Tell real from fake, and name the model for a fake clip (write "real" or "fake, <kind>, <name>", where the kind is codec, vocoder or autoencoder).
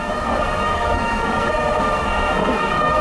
fake, codec, SNAC